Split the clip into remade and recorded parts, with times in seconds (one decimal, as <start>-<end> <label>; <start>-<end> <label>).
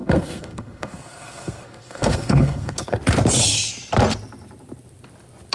0.0-3.0 remade; 3.0-5.5 recorded